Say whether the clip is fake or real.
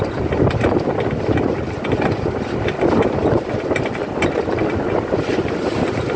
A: real